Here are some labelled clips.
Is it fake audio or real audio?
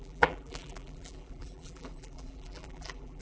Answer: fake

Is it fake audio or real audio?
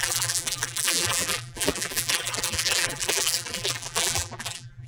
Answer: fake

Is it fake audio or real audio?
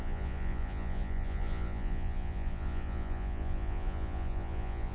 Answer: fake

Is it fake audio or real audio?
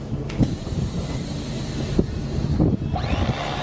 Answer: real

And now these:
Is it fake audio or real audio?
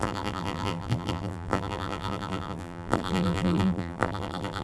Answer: fake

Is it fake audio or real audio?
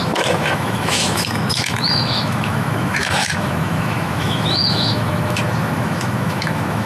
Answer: fake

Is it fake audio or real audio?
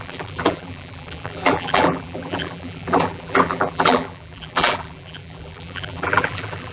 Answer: fake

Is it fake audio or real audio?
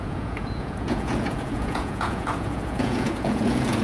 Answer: fake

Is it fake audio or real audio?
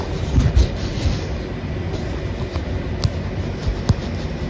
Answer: real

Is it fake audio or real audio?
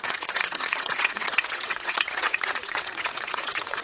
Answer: fake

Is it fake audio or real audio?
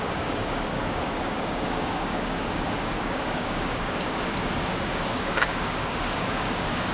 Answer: fake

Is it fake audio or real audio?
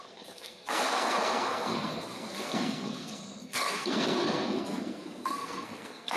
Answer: fake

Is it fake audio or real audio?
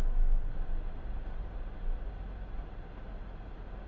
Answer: real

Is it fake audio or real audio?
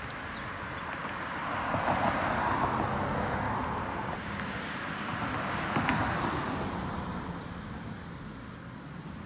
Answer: real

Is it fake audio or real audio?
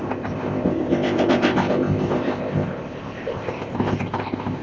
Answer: fake